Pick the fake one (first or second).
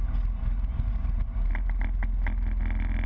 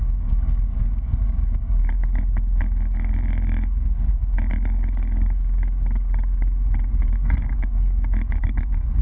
second